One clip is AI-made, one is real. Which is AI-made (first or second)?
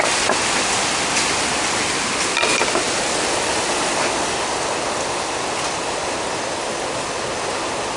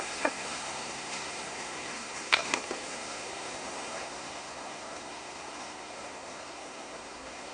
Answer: second